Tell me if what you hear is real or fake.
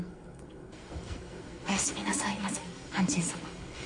fake